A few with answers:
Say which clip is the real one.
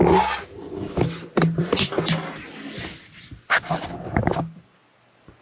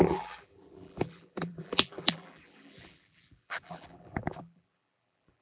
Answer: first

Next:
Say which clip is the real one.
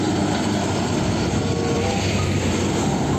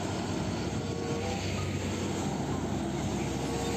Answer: second